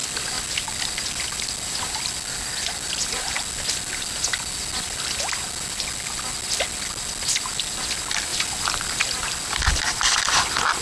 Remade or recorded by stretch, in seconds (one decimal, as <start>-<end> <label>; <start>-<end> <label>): 0.0-10.8 recorded